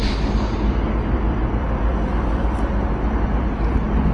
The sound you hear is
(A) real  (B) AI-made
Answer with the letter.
A